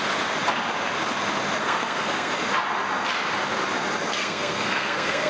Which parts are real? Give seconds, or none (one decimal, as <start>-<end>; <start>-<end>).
0.0-1.6; 2.3-4.1